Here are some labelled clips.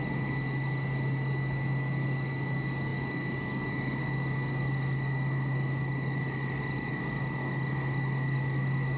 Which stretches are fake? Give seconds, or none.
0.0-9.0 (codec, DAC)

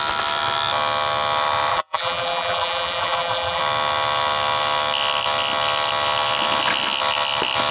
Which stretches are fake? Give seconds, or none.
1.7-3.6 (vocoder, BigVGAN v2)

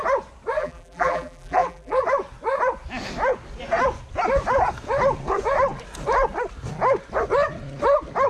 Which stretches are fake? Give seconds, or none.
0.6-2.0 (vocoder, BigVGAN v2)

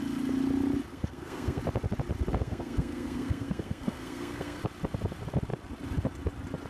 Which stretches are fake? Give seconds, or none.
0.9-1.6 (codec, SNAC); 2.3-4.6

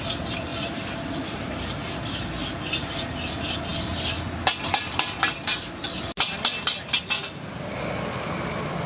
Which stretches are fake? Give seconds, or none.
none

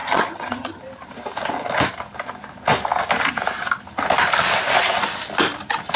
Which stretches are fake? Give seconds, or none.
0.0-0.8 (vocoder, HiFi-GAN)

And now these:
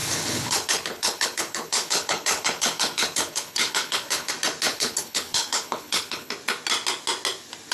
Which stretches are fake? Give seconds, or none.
0.0-4.3 (codec, HILCodec); 4.7-6.3

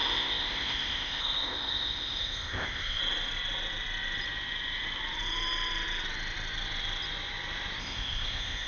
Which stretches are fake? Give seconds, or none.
0.0-3.0 (codec, ZipCodec); 7.8-8.7